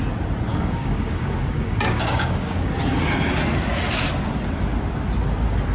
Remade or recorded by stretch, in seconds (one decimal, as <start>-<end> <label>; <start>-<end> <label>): 0.0-0.5 recorded; 0.5-2.7 remade; 2.7-5.7 recorded